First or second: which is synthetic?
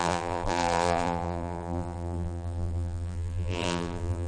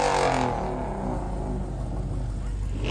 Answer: first